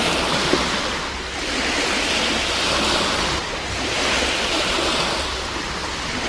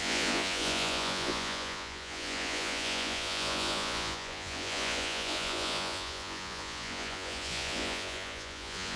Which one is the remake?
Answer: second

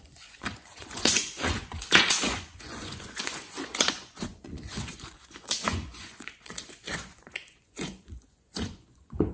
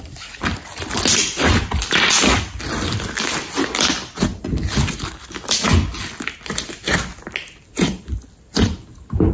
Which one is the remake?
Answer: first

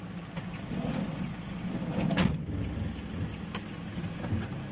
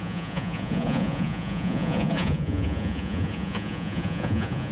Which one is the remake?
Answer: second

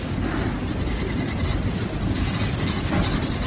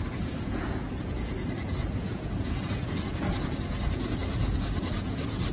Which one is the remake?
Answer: second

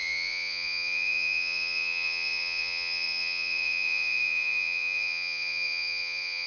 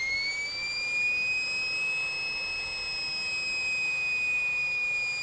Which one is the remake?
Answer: first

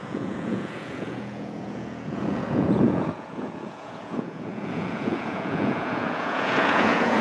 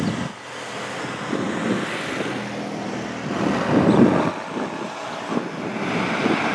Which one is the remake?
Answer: first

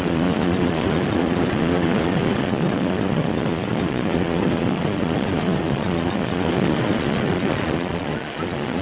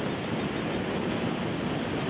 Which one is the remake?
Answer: first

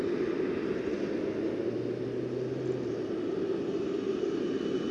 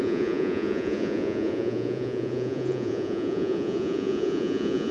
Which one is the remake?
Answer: second